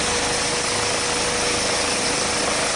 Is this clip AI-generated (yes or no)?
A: no